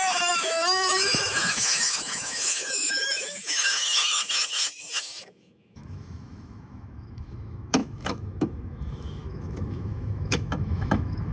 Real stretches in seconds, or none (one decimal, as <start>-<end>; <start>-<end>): none